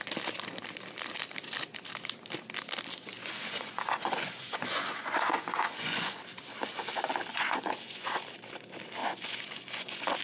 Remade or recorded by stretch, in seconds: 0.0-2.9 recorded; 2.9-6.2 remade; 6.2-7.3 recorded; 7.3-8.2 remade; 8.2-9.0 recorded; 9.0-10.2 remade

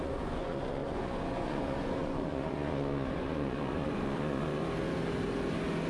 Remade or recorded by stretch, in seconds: 0.0-4.6 remade; 4.6-5.9 recorded

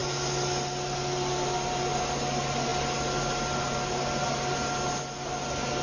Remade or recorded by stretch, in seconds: 0.0-5.8 recorded

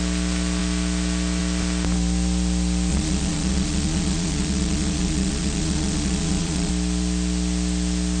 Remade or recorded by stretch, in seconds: 0.0-2.9 recorded; 2.9-6.7 remade; 6.7-8.2 recorded

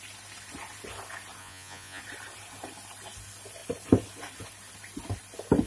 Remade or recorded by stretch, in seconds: 0.0-1.4 recorded; 1.4-2.0 remade; 2.0-5.7 recorded

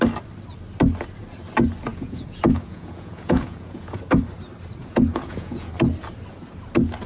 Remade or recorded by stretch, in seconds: 0.0-1.9 recorded; 1.9-4.0 remade; 4.0-4.8 recorded; 4.8-5.7 remade; 5.7-7.1 recorded

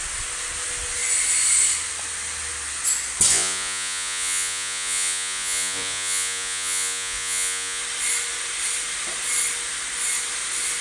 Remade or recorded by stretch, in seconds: 0.0-3.3 recorded; 3.3-7.8 remade; 7.8-10.8 recorded

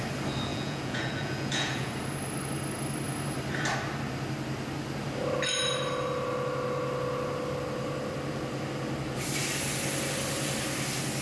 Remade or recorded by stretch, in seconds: 0.0-0.5 recorded; 0.5-1.9 remade; 1.9-11.2 recorded